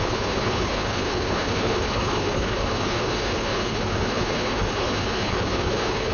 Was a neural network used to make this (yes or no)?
yes